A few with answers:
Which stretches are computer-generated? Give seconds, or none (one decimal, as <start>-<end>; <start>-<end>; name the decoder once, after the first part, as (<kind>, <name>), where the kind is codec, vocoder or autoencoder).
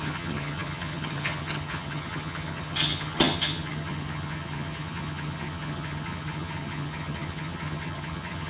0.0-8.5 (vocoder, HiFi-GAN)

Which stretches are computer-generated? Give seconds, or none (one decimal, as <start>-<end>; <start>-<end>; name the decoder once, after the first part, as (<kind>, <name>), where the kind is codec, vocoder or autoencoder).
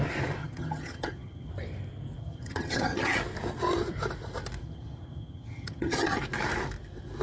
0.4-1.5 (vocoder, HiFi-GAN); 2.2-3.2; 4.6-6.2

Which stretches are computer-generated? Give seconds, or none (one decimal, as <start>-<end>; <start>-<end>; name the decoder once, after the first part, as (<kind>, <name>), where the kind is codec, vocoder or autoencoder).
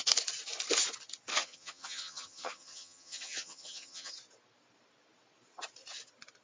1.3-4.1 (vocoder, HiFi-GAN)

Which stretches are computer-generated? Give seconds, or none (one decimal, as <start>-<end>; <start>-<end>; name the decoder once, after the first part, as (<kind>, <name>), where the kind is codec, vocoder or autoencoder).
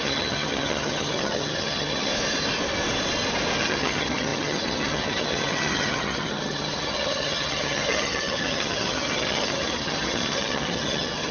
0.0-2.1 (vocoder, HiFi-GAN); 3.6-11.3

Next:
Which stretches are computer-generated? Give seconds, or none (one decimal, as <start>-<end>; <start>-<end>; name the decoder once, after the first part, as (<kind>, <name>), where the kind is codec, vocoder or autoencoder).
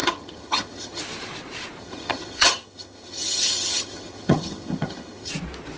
0.0-1.0 (vocoder, HiFi-GAN); 1.8-5.3